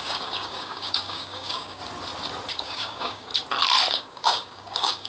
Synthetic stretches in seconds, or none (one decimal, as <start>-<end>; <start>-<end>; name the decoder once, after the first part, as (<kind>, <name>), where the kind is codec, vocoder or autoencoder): 0.0-1.8 (codec, DAC); 2.5-3.3; 3.9-5.1

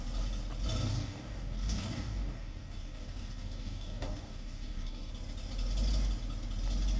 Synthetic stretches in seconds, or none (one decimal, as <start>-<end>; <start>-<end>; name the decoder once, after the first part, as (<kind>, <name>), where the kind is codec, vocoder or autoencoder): 0.9-5.1 (codec, DAC)

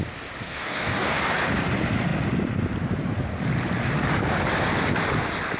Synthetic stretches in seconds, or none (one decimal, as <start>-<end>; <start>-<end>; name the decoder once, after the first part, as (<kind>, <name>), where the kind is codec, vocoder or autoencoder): 0.5-1.4 (codec, DAC)